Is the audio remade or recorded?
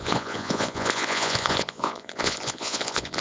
remade